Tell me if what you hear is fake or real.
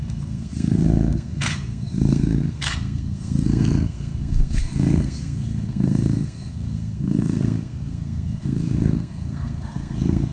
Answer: fake